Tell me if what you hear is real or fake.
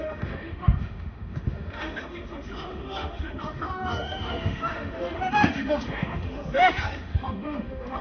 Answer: fake